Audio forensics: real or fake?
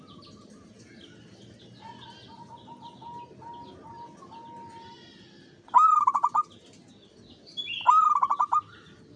real